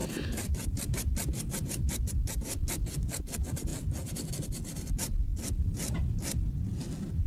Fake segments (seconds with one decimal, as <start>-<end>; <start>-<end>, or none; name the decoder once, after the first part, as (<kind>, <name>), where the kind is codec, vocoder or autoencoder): none